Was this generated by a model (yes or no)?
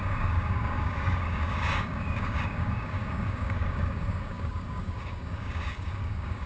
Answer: yes